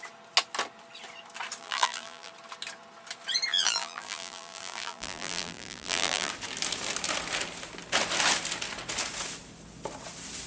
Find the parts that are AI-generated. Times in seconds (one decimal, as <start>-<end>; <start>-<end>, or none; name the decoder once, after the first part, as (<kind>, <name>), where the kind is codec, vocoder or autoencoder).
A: 1.6-2.3 (vocoder, BigVGAN v2); 3.5-6.3